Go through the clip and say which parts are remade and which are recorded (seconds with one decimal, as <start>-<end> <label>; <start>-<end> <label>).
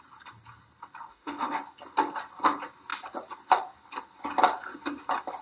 0.0-1.1 recorded; 1.1-1.6 remade; 1.6-5.4 recorded